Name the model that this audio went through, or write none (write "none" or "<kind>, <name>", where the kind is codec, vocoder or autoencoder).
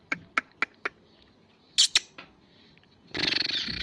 none